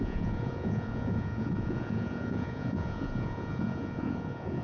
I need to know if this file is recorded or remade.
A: remade